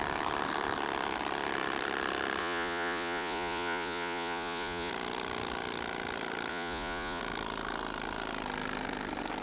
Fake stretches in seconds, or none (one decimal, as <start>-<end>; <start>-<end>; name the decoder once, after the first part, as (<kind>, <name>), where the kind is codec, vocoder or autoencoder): 2.4-4.9 (vocoder, Vocos); 6.5-7.2